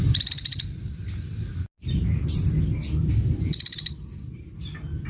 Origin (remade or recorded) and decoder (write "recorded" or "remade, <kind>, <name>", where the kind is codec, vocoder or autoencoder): recorded